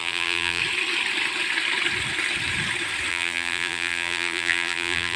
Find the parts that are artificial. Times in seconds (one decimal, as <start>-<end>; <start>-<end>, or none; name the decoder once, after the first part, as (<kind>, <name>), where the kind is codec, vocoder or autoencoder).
0.0-0.6 (vocoder, BigVGAN v2); 3.1-5.2